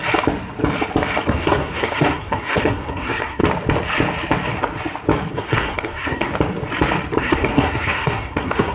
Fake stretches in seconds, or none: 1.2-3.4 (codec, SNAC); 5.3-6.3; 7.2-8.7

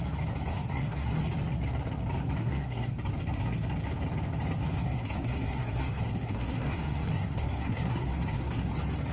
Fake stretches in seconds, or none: 0.5-1.2 (codec, SNAC); 2.4-2.9; 4.8-8.7

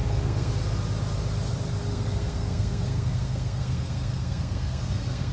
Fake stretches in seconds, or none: 0.0-0.5 (codec, SNAC); 1.9-5.3

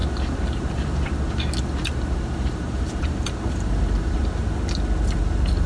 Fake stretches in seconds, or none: 0.0-1.1 (vocoder, BigVGAN v2); 1.8-4.2